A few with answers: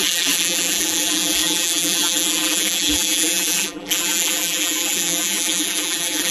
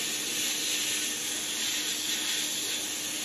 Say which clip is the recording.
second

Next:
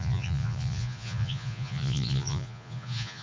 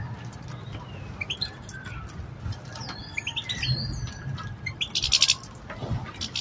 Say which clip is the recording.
second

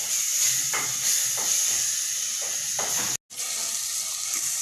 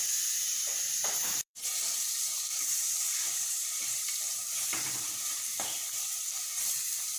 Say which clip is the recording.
first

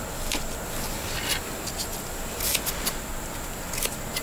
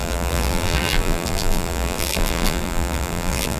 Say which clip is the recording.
first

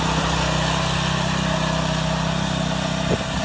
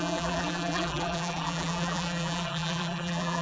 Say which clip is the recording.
first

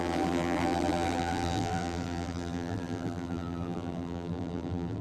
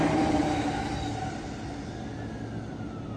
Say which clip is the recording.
second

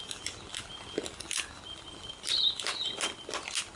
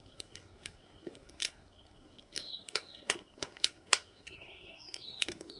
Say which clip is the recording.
first